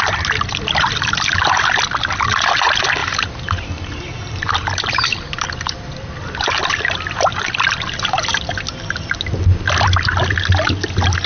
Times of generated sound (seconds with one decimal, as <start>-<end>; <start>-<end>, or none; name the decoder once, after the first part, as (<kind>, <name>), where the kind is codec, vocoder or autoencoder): 3.0-7.4 (vocoder, BigVGAN v2)